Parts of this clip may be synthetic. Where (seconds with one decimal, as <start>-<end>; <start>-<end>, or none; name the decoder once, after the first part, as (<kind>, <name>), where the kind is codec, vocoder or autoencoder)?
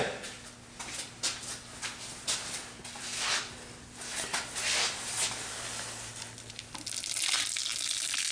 none